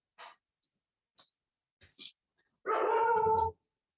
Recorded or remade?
recorded